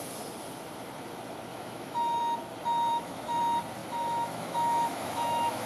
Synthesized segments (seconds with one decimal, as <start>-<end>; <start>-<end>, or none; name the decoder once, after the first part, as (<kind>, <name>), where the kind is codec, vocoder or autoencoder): 1.5-2.2 (autoencoder, DAC-VAE); 2.9-3.4; 3.8-5.7